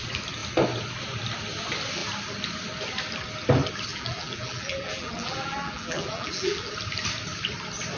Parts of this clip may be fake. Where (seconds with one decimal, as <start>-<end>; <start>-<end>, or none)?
3.9-6.7